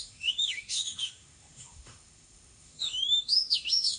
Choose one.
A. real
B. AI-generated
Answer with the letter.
B